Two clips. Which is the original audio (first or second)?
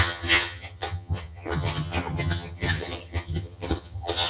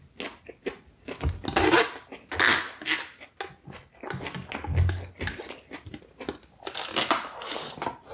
second